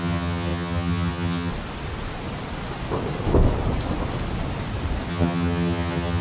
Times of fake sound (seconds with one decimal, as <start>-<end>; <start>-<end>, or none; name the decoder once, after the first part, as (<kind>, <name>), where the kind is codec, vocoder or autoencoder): 0.0-1.5 (vocoder, HiFi-GAN); 5.1-6.2